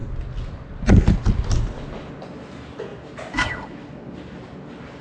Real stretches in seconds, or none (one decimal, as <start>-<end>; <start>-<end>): 0.0-5.0